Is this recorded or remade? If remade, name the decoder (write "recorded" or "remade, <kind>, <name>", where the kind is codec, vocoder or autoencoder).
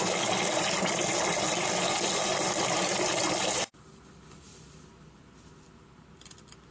recorded